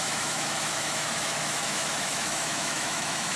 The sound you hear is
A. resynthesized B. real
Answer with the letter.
A